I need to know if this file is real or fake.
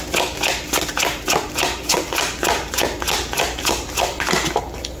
real